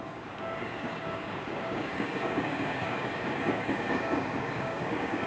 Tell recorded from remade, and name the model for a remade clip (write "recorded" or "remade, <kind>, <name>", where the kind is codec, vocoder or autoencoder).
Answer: remade, codec, DAC